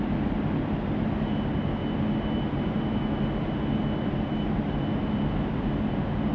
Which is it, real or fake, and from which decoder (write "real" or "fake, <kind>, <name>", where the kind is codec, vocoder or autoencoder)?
real